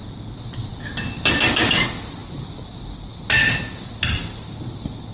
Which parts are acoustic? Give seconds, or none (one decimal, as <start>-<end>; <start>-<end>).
0.0-5.1